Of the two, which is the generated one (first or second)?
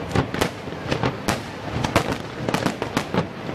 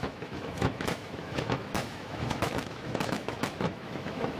second